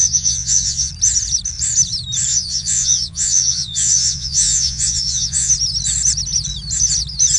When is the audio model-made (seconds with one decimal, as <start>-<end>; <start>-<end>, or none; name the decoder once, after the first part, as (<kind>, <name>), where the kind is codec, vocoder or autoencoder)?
0.0-0.9 (vocoder, Vocos); 2.3-5.5